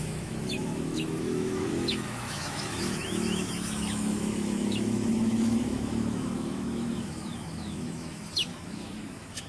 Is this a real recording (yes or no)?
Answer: no